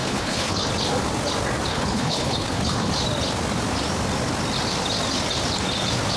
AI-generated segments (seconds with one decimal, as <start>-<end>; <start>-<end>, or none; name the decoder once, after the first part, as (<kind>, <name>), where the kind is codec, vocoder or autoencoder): 0.0-0.7 (codec, HILCodec); 1.7-2.9